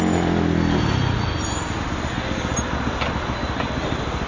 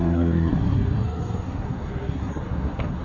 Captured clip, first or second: first